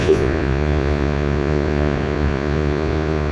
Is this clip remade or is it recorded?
remade